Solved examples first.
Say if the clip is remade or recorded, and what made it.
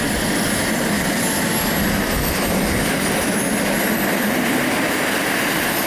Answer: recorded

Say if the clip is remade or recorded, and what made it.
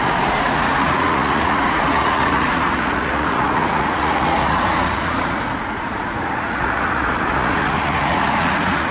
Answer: remade, vocoder, Vocos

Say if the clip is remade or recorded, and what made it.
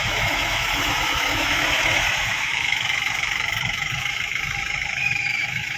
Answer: remade, autoencoder, DAC-VAE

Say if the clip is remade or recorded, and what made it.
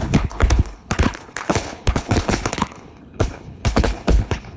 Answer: remade, codec, HILCodec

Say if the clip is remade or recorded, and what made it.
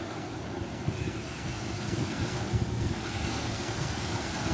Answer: remade, codec, SNAC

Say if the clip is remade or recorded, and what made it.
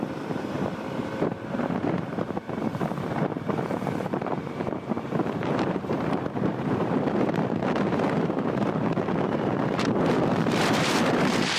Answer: remade, vocoder, BigVGAN v2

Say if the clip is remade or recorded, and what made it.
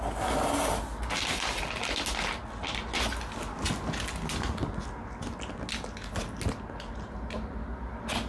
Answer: recorded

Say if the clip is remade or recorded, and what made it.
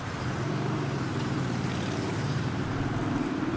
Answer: remade, vocoder, BigVGAN v2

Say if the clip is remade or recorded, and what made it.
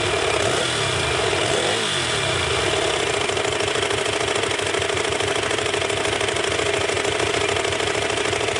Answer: recorded